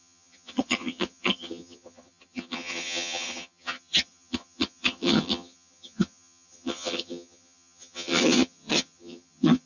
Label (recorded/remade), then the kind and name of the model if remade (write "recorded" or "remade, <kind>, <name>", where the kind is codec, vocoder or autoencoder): remade, vocoder, HiFi-GAN